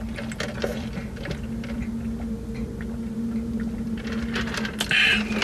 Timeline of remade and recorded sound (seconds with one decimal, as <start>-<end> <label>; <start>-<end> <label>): 0.0-0.7 recorded; 0.7-1.8 remade; 1.8-5.4 recorded